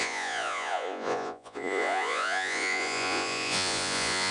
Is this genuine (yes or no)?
no